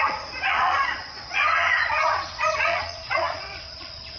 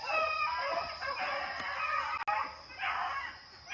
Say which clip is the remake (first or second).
first